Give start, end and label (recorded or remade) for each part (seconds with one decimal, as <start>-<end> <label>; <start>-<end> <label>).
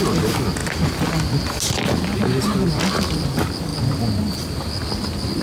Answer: 0.0-5.4 recorded